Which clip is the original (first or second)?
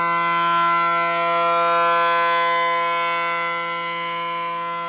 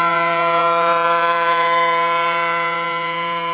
first